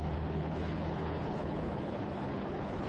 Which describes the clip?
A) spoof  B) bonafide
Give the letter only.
A